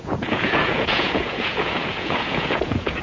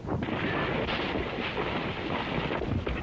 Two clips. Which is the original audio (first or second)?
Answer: second